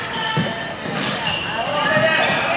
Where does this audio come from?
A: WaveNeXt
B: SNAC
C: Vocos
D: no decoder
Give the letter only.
D